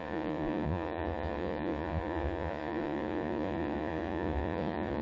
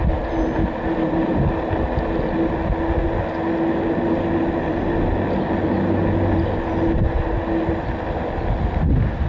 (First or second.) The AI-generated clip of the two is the first